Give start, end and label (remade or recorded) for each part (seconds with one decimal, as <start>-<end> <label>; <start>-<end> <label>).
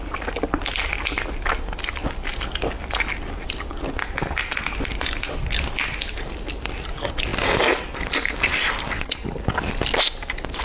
0.0-10.6 recorded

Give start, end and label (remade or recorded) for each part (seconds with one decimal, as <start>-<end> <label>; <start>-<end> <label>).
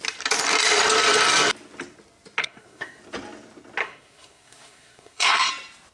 0.0-2.4 recorded; 2.4-3.0 remade; 3.0-3.8 recorded; 3.8-5.5 remade; 5.5-5.9 recorded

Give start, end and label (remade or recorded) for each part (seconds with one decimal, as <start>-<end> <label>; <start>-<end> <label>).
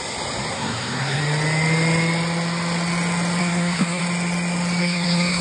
0.0-0.5 recorded; 0.5-1.2 remade; 1.2-3.4 recorded; 3.4-4.0 remade; 4.0-4.8 recorded; 4.8-5.4 remade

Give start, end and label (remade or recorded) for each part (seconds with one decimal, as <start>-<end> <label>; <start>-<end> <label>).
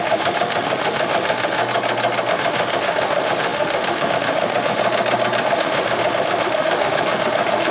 0.0-1.6 remade; 1.6-2.3 recorded; 2.3-4.8 remade; 4.8-5.4 recorded; 5.4-7.7 remade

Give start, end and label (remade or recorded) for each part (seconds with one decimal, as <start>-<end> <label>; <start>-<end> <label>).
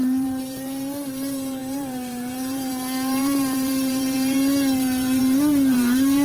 0.0-6.2 remade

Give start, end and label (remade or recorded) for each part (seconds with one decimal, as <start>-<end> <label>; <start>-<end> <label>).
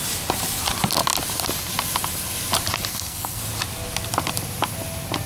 0.0-2.9 recorded; 2.9-3.4 remade; 3.4-5.3 recorded